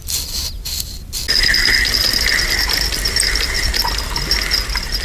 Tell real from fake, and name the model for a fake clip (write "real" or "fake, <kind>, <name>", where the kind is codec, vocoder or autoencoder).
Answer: real